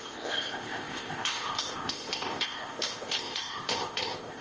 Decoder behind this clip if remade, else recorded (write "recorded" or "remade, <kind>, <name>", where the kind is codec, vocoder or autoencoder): remade, codec, ZipCodec